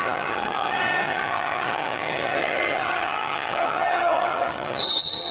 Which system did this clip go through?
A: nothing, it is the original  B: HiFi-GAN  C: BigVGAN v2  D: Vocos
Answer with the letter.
B